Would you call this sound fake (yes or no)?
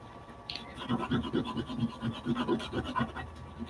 no